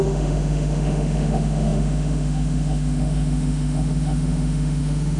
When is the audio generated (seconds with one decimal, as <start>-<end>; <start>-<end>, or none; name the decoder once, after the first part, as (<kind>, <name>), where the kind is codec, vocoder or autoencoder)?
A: 0.0-5.2 (autoencoder, DAC-VAE)